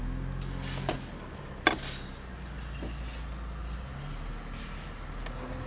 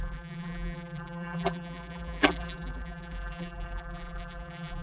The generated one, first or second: second